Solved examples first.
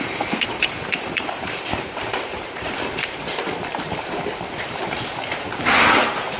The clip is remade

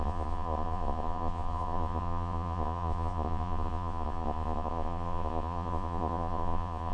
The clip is remade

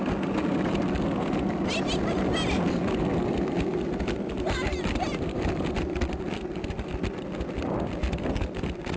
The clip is recorded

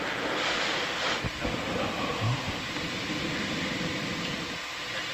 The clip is recorded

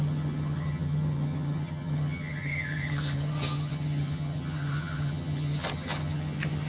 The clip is remade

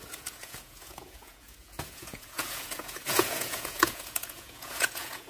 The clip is remade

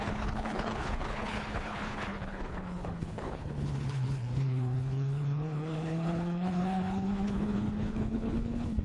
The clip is remade